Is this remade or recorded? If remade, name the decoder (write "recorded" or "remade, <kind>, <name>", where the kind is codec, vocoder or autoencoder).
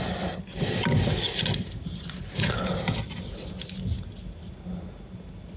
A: recorded